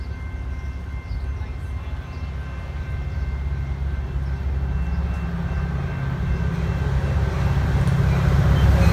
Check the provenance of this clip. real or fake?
real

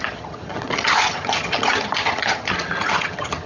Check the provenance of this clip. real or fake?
fake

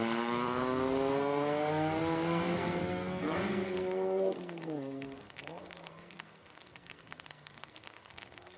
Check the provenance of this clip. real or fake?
fake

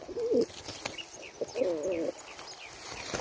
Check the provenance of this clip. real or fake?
real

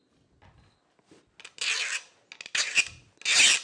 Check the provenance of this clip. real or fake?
real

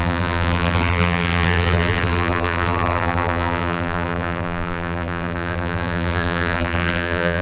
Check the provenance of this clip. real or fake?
fake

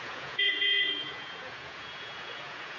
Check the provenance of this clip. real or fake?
fake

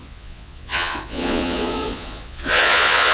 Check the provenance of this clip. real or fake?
fake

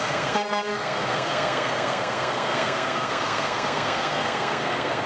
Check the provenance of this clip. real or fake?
fake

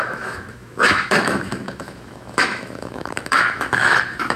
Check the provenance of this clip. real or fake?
fake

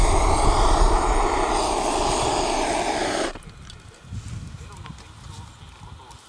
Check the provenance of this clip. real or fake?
real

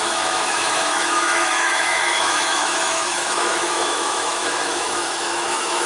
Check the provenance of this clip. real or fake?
fake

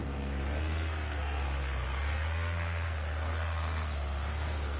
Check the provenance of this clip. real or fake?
fake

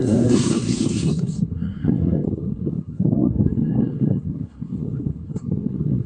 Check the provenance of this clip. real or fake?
fake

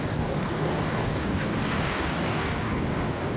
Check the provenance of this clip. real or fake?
fake